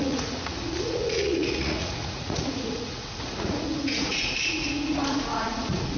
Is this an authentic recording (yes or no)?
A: no